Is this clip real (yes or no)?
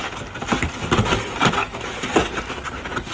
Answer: yes